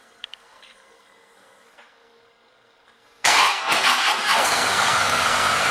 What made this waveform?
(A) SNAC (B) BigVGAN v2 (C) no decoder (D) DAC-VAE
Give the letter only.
A